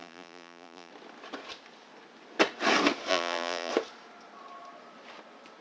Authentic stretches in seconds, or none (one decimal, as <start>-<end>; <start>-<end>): 0.9-3.1; 3.7-5.6